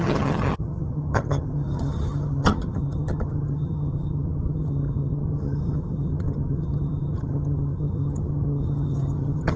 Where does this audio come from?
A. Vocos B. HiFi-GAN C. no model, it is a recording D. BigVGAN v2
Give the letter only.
B